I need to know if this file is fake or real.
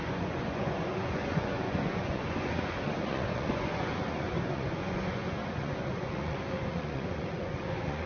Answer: fake